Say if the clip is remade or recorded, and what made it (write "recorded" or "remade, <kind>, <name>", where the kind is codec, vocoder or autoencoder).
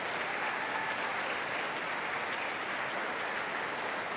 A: recorded